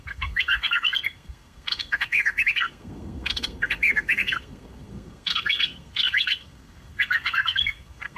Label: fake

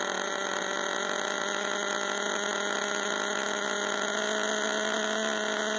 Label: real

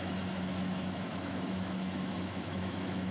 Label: fake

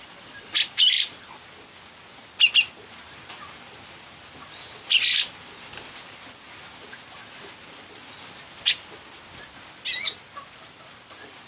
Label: real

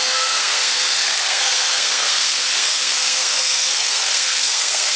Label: fake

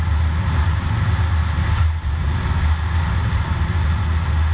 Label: real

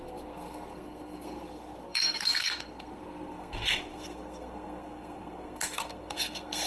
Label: fake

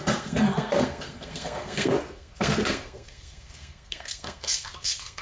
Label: fake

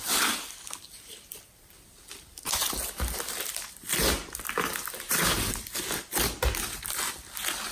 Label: real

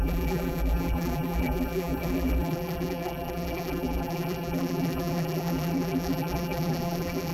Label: fake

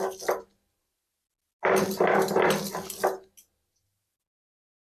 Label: real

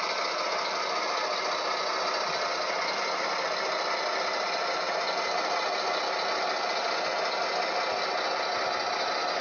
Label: real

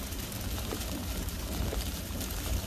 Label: fake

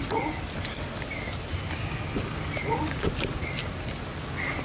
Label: real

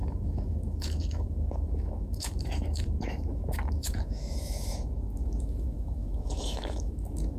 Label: fake